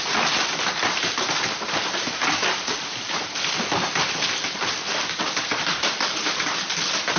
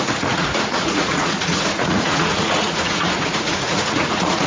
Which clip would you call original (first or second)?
first